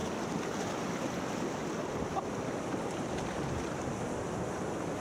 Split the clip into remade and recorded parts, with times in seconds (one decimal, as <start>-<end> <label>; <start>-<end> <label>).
0.0-5.0 recorded